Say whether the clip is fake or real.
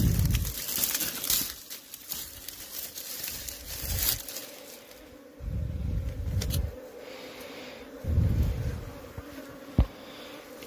real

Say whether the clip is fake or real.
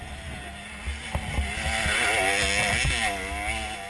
real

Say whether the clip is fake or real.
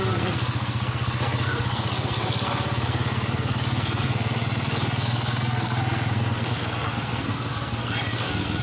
fake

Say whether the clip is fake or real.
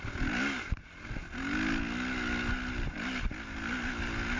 real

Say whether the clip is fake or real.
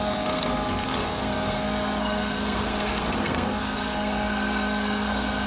fake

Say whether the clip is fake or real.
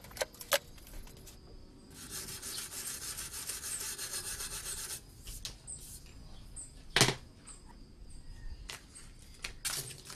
real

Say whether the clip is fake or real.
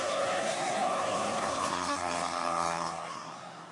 fake